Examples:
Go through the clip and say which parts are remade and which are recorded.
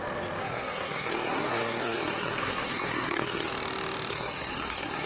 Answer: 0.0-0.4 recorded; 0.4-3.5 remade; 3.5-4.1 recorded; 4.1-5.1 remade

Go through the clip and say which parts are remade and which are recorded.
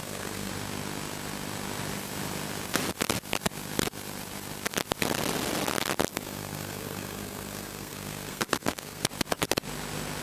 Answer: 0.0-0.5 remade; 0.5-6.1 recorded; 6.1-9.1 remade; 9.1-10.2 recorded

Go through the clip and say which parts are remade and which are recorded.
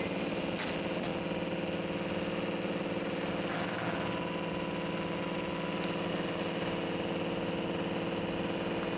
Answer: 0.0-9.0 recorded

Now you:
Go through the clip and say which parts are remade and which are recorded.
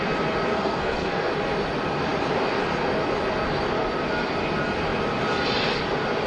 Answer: 0.0-0.5 recorded; 0.5-1.3 remade; 1.3-6.3 recorded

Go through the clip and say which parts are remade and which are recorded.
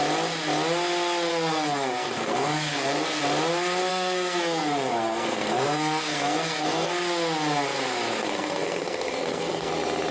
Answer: 0.0-1.3 recorded; 1.3-3.2 remade; 3.2-3.9 recorded; 3.9-6.9 remade; 6.9-8.2 recorded; 8.2-9.7 remade; 9.7-10.1 recorded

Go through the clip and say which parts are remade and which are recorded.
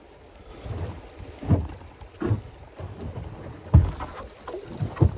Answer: 0.0-5.2 recorded